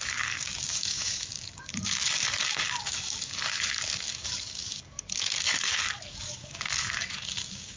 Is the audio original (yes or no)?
no